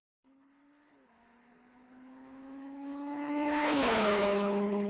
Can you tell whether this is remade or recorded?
remade